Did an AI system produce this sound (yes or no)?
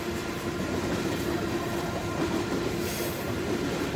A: yes